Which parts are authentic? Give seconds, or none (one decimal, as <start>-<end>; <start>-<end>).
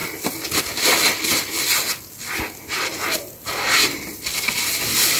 0.0-5.2